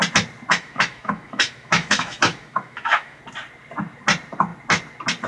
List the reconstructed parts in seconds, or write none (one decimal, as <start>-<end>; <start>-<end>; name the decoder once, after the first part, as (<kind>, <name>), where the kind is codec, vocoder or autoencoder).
0.5-3.2 (autoencoder, DAC-VAE)